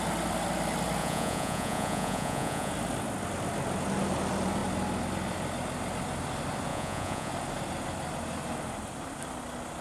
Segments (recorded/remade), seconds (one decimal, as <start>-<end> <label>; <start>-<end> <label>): 0.0-1.0 recorded; 1.0-2.7 remade; 2.7-6.7 recorded; 6.7-7.3 remade; 7.3-9.8 recorded